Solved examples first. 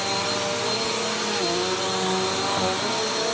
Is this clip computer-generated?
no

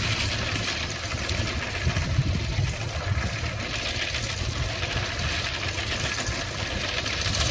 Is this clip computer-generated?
no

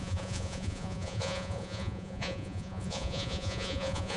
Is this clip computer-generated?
yes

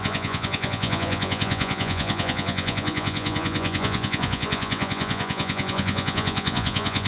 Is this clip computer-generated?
yes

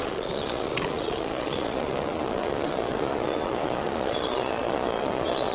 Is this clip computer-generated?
yes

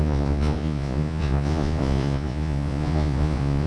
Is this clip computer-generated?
yes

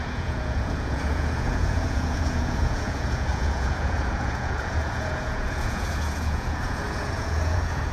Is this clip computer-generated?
yes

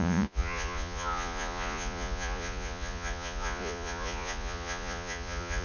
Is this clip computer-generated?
yes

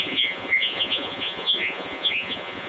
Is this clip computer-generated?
yes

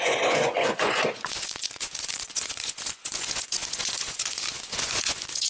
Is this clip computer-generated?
yes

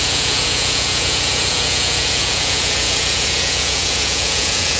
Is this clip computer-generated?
yes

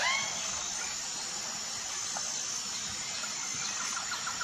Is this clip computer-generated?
no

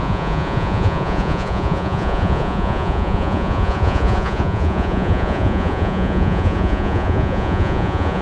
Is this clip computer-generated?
yes